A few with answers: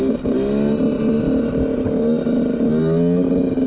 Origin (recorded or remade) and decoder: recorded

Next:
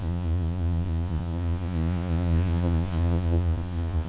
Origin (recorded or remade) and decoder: remade, vocoder, Vocos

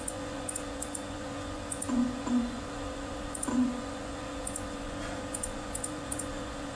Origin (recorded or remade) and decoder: remade, vocoder, Vocos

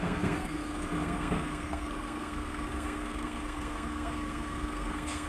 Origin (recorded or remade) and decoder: remade, codec, SNAC